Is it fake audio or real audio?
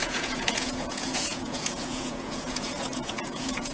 fake